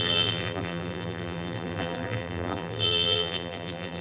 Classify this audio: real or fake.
fake